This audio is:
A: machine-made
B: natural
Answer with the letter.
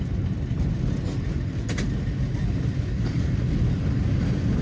B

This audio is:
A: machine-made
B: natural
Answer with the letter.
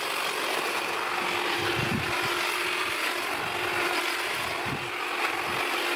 B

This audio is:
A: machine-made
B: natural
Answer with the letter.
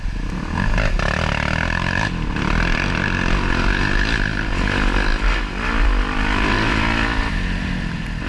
B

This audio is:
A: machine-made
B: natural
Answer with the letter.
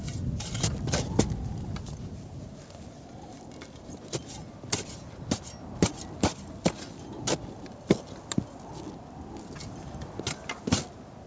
B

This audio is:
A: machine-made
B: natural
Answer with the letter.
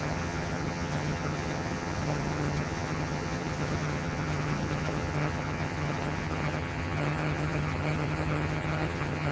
A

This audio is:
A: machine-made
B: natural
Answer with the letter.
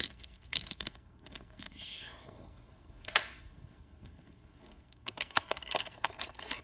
A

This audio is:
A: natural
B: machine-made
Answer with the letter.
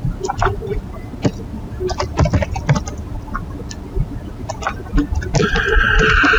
A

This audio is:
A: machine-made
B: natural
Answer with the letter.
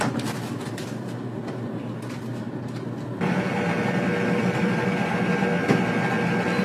B